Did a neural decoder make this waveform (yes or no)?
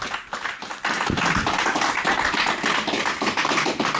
no